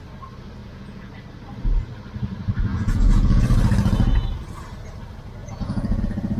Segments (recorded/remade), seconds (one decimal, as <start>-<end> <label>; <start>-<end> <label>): 0.0-0.6 recorded; 0.6-1.1 remade; 1.1-2.7 recorded; 2.7-3.4 remade; 3.4-5.4 recorded; 5.4-6.0 remade; 6.0-6.4 recorded